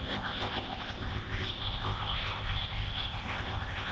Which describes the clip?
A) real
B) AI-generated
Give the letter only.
B